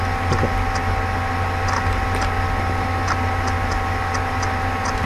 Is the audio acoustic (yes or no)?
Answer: yes